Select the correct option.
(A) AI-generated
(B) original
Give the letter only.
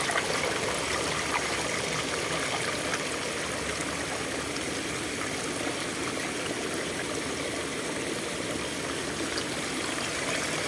B